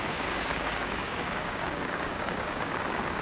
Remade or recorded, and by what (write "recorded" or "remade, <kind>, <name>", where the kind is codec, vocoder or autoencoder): remade, codec, DAC